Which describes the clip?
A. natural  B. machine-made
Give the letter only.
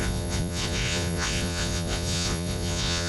B